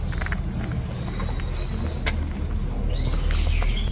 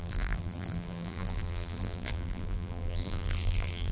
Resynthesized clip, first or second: second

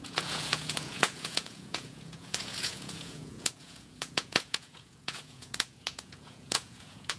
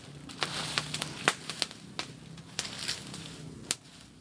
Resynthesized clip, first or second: first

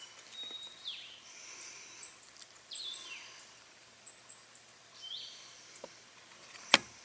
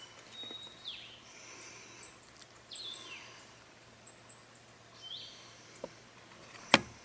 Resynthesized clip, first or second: first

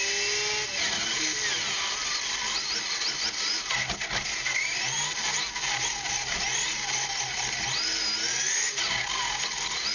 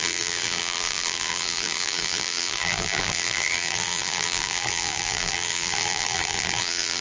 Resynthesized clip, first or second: second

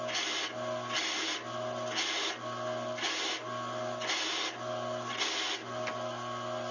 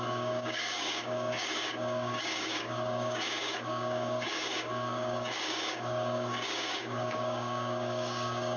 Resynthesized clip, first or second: second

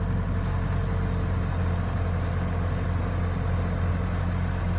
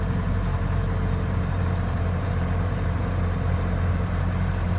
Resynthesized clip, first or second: second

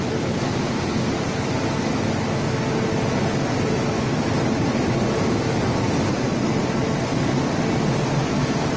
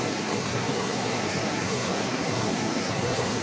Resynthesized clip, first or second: second